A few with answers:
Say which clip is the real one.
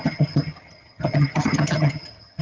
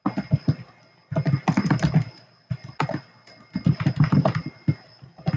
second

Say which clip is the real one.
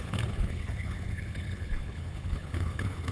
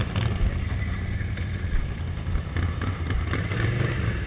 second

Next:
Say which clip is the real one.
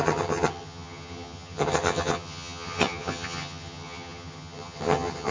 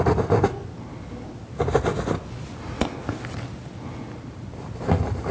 second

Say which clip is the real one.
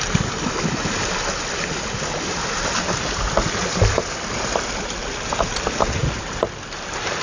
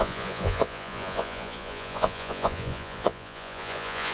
first